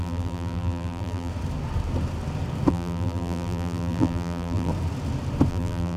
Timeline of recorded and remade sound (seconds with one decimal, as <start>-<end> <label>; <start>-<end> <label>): 0.0-1.3 remade; 1.3-2.7 recorded; 2.7-4.7 remade; 4.7-5.5 recorded; 5.5-6.0 remade